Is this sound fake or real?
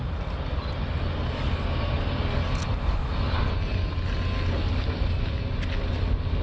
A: real